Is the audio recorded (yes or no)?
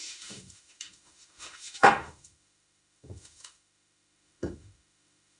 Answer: no